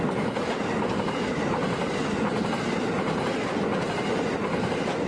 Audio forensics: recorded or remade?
recorded